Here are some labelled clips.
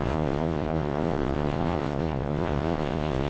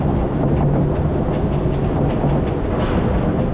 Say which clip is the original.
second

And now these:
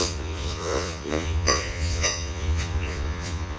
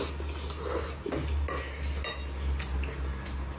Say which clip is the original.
second